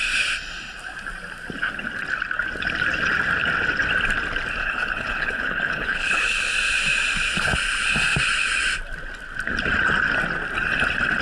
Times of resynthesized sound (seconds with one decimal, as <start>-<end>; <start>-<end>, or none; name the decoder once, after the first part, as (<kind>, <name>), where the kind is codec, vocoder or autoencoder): 4.6-6.5 (codec, HILCodec)